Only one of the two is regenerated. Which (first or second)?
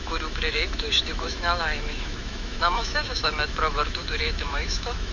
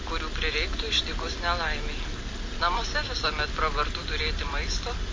first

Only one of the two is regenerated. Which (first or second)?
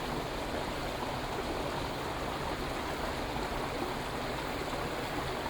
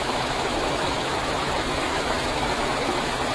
second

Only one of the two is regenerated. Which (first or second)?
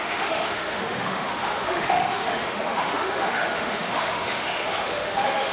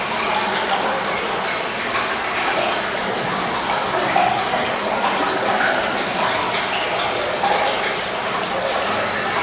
first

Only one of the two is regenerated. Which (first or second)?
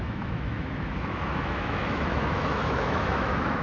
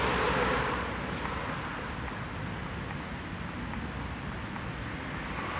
first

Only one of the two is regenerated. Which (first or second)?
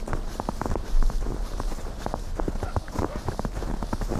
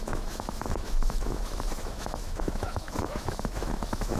second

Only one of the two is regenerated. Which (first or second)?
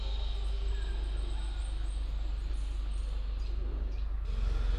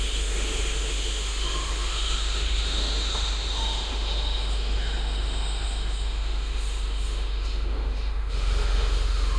second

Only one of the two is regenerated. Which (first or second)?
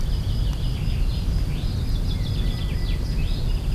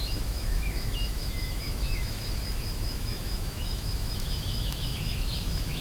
second